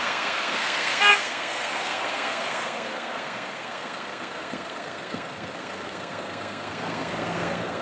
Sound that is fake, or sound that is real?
fake